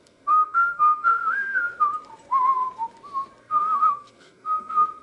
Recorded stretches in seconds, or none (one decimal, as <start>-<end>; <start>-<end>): 1.7-3.4